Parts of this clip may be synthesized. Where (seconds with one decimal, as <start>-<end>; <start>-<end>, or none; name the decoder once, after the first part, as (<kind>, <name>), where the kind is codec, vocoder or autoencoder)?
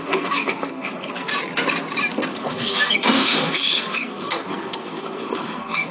0.0-1.3 (codec, SNAC); 2.3-5.9